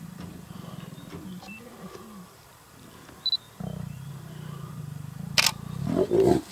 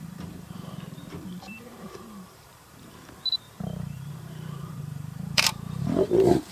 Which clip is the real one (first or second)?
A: first